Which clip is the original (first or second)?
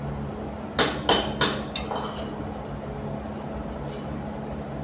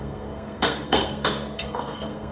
first